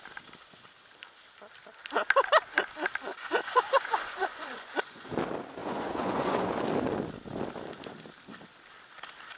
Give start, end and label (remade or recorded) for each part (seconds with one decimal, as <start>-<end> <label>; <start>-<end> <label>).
0.0-3.1 recorded; 3.1-5.1 remade; 5.1-5.6 recorded; 5.6-6.5 remade; 6.5-9.4 recorded